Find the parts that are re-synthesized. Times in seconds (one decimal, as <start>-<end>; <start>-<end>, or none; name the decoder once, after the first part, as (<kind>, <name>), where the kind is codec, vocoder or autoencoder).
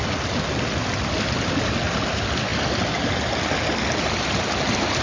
none